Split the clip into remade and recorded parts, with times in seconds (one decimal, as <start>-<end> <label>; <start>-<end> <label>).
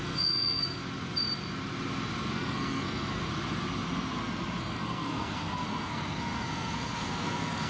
0.0-0.8 remade; 0.8-2.3 recorded; 2.3-3.3 remade; 3.3-4.6 recorded; 4.6-7.7 remade